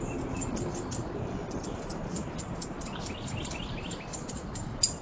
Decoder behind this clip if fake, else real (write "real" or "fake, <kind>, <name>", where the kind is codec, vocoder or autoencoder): real